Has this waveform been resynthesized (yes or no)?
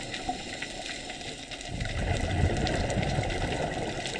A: no